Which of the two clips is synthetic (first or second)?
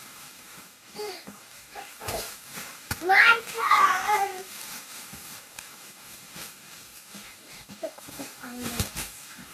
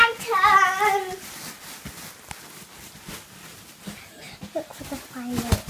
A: first